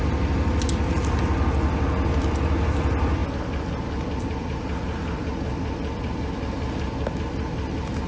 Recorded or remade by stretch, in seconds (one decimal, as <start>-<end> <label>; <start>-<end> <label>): 0.0-8.1 recorded